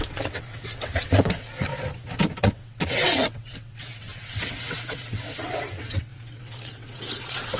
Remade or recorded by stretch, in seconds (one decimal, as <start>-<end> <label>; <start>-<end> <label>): 0.0-1.7 remade; 1.7-2.4 recorded; 2.4-7.6 remade

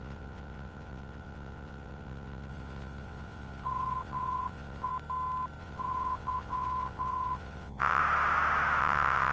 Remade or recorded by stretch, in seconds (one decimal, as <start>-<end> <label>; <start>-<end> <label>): 0.0-4.9 remade; 4.9-5.6 recorded; 5.6-8.0 remade; 8.0-8.8 recorded; 8.8-9.3 remade